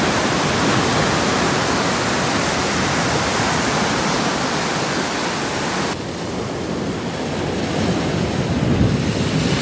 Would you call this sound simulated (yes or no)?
no